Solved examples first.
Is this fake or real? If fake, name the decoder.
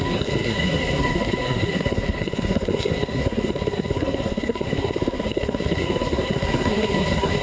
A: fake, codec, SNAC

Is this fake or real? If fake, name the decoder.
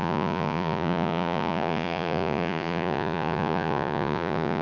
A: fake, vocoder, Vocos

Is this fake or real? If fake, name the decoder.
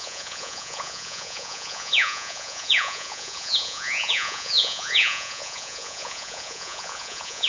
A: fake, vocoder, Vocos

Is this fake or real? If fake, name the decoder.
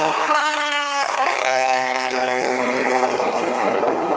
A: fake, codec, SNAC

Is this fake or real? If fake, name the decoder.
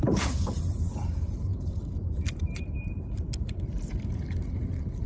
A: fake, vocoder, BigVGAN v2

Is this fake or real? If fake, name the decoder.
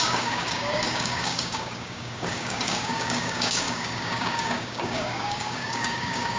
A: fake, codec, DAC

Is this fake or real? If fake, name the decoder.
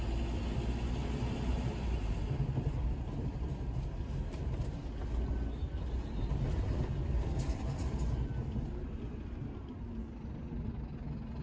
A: real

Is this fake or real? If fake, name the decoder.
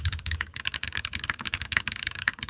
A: fake, codec, DAC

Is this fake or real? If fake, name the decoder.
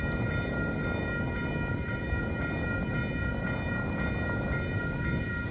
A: real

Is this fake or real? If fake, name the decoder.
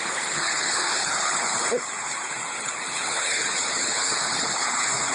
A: fake, codec, HILCodec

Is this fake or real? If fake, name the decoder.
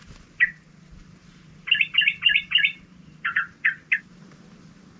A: real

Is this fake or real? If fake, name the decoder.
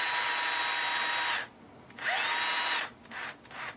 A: real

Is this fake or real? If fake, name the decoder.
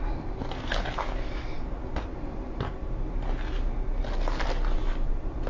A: real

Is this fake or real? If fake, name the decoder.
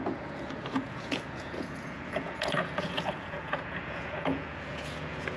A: fake, vocoder, Vocos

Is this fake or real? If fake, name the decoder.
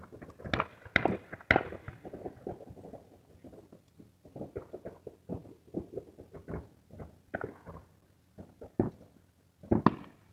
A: real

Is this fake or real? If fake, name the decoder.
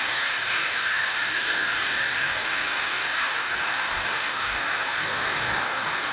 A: fake, codec, DAC